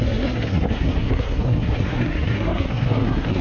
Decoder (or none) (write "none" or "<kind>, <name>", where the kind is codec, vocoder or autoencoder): codec, SNAC